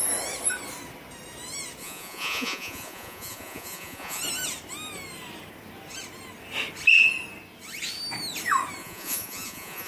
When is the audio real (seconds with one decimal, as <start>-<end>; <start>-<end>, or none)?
0.0-1.8; 4.2-8.8